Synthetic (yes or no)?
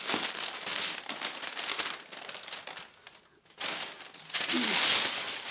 no